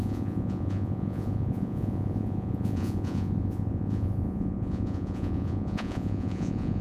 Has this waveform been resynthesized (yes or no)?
yes